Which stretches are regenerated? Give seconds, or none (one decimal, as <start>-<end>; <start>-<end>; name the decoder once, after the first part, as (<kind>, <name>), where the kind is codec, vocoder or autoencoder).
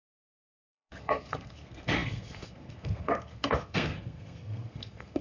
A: 0.0-5.2 (codec, SNAC)